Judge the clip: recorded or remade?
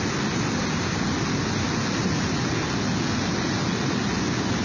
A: recorded